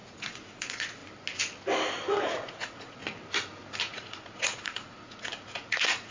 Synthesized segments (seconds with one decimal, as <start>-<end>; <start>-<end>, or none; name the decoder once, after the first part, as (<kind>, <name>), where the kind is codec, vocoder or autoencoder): 0.0-1.0 (vocoder, Vocos); 2.2-3.0; 3.8-6.1